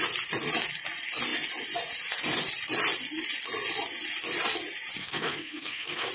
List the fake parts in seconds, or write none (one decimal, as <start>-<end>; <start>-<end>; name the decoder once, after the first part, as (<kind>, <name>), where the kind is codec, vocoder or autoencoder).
5.0-6.1 (codec, SNAC)